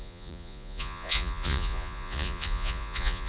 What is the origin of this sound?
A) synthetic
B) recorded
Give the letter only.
A